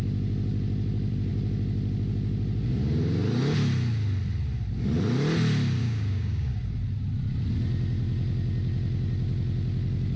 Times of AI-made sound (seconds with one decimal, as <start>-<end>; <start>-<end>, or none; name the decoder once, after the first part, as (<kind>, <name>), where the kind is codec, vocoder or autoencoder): 5.8-6.5 (codec, DAC)